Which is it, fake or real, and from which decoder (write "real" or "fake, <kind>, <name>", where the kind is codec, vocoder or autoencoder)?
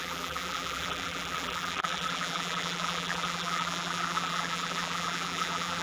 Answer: fake, vocoder, BigVGAN v2